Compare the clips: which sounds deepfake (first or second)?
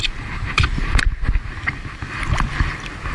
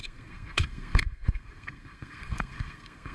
second